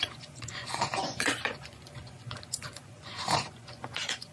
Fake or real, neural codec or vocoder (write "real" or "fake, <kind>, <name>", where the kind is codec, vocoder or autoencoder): fake, vocoder, Vocos